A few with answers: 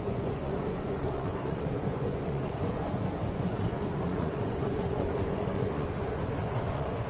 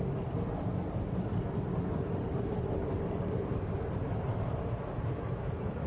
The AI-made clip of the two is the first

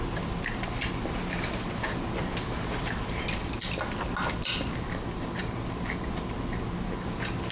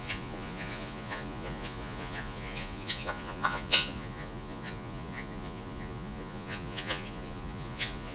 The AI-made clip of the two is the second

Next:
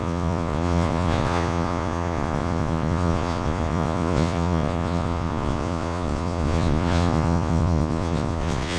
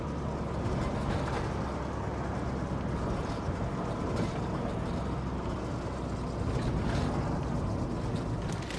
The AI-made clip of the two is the first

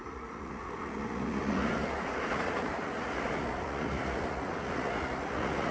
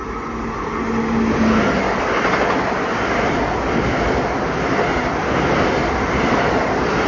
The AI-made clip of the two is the first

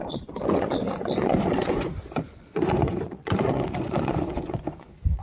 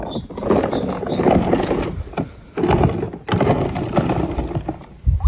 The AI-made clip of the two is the first